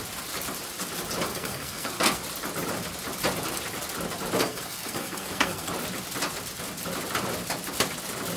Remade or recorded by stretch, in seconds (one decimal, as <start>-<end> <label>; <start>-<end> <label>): 0.0-1.3 recorded; 1.3-2.2 remade; 2.2-4.4 recorded; 4.4-5.7 remade; 5.7-8.4 recorded